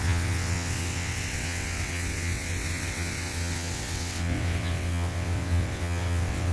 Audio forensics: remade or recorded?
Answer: remade